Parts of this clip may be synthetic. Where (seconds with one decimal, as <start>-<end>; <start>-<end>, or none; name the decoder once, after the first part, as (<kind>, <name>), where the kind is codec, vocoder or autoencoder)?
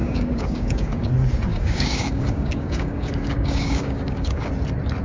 0.0-1.1 (codec, DAC); 1.5-4.5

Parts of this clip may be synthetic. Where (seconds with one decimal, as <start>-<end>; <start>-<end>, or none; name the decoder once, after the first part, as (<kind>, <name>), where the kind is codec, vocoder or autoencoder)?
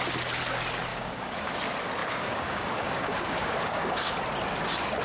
0.9-1.5 (codec, DAC); 2.0-4.1